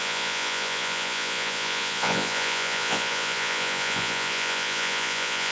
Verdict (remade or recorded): remade